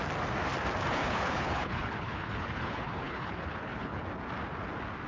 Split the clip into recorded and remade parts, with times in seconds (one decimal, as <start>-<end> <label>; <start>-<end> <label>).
0.0-0.9 recorded; 0.9-4.0 remade; 4.0-5.1 recorded